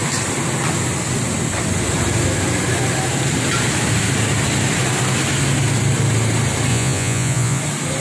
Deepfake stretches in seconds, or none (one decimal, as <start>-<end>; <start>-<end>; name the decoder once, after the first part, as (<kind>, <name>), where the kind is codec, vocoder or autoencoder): 6.7-7.6 (vocoder, Vocos)